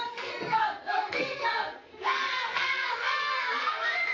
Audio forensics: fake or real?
fake